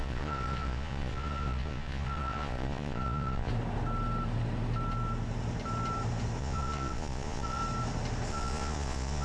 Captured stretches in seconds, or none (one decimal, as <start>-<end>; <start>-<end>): 3.5-6.4; 7.6-8.3